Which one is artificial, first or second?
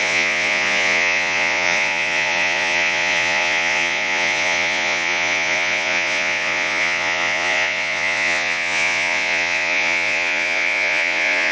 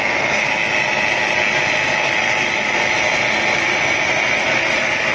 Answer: first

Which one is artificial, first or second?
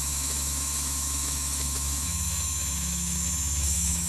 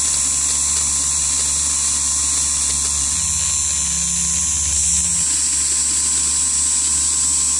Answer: first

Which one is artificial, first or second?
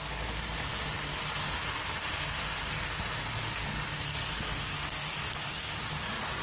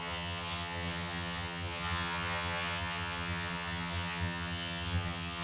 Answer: second